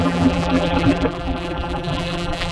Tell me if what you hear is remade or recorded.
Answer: remade